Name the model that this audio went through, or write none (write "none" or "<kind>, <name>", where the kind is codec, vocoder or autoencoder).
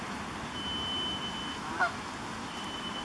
none